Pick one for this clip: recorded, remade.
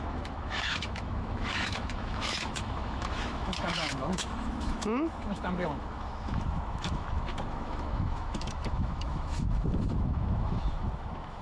remade